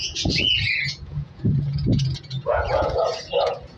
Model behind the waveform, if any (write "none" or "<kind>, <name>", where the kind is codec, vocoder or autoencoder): vocoder, Vocos